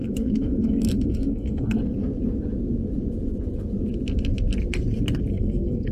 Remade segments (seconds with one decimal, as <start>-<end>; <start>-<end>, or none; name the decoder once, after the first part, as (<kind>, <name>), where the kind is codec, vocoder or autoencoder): 0.0-1.8 (codec, SNAC); 5.3-5.9